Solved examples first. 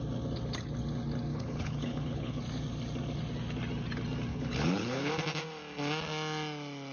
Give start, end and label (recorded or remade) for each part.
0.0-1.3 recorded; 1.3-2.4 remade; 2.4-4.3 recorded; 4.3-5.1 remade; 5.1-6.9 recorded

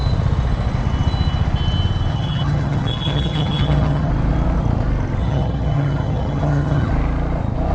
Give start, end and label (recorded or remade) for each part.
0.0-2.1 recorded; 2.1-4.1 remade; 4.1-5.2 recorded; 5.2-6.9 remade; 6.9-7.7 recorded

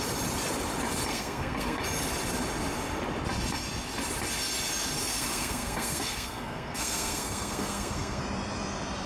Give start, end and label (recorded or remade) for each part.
0.0-1.1 recorded; 1.1-1.8 remade; 1.8-5.0 recorded; 5.0-8.2 remade; 8.2-9.1 recorded